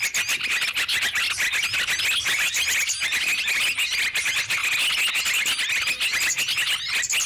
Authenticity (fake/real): real